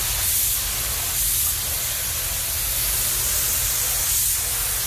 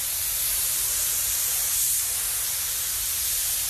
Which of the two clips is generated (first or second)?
second